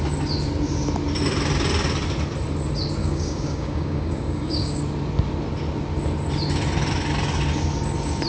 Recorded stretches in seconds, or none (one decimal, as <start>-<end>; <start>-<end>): 0.0-3.0; 4.8-8.3